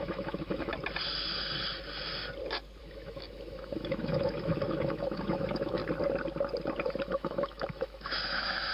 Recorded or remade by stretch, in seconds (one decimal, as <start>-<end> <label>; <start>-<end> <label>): 0.0-0.7 remade; 0.7-2.8 recorded; 2.8-5.8 remade; 5.8-7.0 recorded; 7.0-8.7 remade